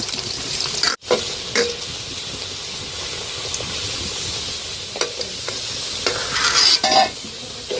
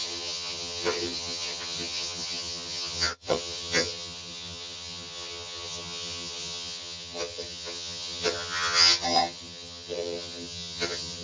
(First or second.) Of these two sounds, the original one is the first